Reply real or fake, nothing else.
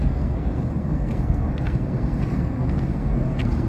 fake